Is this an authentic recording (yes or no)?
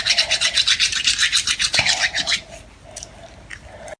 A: yes